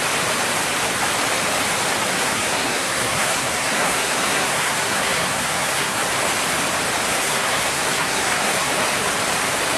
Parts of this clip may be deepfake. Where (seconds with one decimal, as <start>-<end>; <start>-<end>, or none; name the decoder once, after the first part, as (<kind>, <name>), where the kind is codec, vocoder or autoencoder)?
2.1-6.0 (codec, SNAC); 7.1-8.7